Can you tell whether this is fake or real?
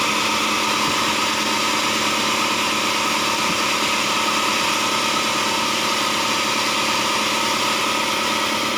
real